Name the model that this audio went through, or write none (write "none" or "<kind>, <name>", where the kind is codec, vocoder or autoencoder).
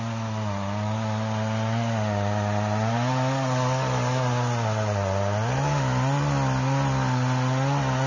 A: none